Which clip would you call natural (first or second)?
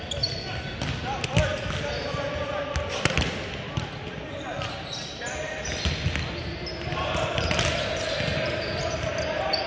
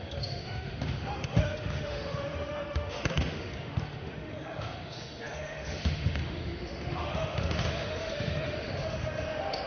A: first